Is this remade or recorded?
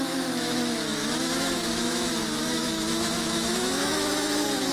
remade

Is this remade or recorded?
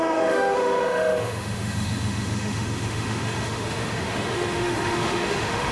remade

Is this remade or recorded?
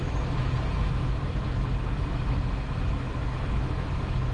remade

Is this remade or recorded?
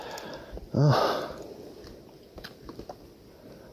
recorded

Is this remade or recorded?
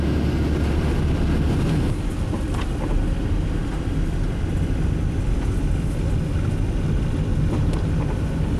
recorded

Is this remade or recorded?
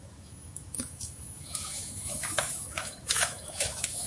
remade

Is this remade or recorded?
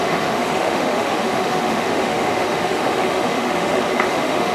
remade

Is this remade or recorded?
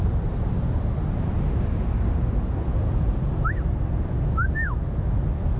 recorded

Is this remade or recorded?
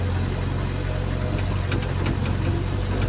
recorded